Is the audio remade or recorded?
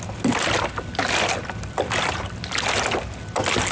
recorded